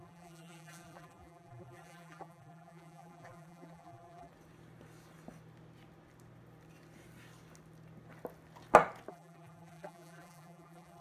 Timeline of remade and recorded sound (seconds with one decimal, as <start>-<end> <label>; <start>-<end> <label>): 0.0-4.3 remade; 4.3-9.1 recorded; 9.1-11.0 remade